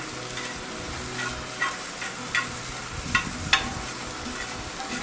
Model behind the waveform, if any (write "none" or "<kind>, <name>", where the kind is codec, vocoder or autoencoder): none